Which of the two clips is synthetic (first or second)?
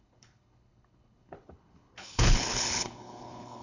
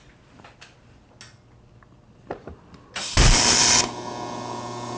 first